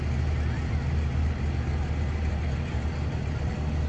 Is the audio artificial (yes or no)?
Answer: no